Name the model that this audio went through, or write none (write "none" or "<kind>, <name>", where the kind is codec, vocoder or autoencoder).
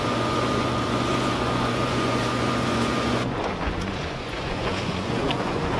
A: vocoder, Vocos